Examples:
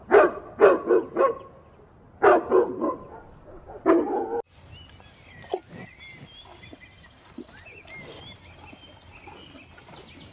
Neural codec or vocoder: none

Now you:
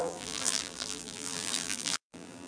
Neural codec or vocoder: vocoder, BigVGAN v2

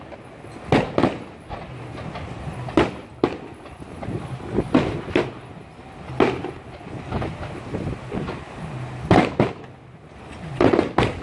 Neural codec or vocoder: none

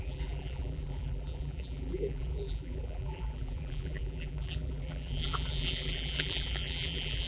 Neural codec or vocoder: vocoder, BigVGAN v2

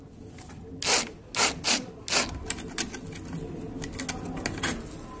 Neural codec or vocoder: none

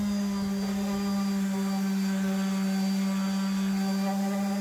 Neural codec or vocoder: none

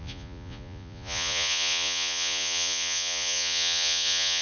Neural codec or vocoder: vocoder, Vocos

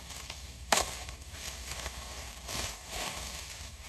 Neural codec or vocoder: codec, DAC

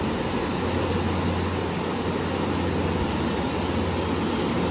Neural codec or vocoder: none